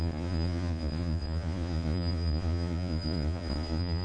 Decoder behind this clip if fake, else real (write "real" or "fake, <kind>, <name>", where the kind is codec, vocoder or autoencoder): fake, vocoder, Vocos